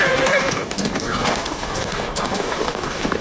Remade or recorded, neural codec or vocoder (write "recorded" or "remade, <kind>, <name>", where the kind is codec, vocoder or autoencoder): remade, codec, DAC